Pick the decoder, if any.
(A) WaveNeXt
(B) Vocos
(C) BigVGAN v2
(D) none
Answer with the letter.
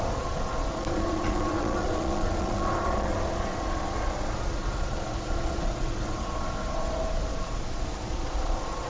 B